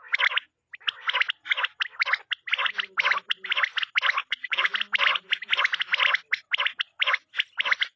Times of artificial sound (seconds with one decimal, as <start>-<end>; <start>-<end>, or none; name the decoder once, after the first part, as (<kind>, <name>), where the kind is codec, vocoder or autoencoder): 4.2-4.7 (vocoder, Vocos)